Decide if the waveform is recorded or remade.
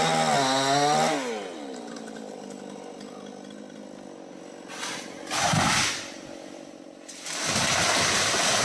recorded